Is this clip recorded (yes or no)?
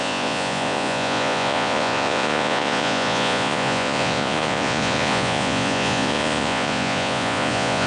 no